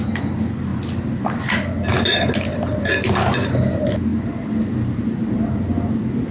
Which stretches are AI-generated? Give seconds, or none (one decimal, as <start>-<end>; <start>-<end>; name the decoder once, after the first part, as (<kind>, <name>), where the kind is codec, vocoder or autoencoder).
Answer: none